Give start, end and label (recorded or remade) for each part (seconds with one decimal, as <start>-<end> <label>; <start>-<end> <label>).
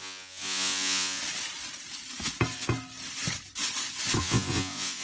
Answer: 0.0-1.2 remade; 1.2-4.2 recorded; 4.2-5.0 remade